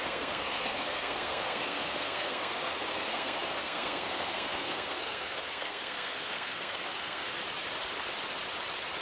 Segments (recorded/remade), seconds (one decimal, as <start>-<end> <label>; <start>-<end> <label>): 0.0-7.4 remade; 7.4-9.0 recorded

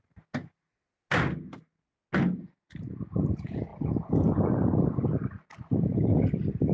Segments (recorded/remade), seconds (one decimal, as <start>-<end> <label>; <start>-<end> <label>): 0.0-6.7 recorded

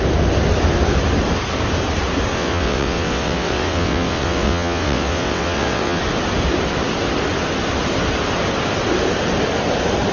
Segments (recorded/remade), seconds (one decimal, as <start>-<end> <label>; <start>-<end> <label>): 0.0-2.3 recorded; 2.3-6.0 remade; 6.0-10.1 recorded

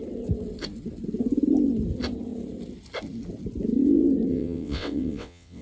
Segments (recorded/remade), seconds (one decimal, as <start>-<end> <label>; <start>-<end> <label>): 0.0-4.3 recorded; 4.3-5.6 remade

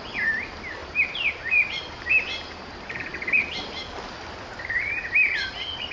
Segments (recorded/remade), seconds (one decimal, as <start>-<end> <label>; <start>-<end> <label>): 0.0-0.8 recorded; 0.8-3.4 remade; 3.4-5.9 recorded

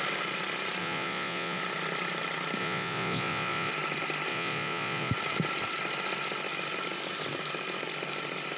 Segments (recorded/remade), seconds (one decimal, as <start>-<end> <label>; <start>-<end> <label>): 0.0-0.8 recorded; 0.8-1.6 remade; 1.6-2.6 recorded; 2.6-3.7 remade; 3.7-4.3 recorded; 4.3-5.1 remade; 5.1-8.6 recorded

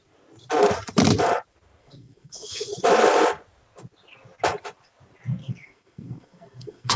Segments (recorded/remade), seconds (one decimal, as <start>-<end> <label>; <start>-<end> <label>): 0.0-1.8 recorded; 1.8-2.7 remade; 2.7-5.4 recorded; 5.4-7.0 remade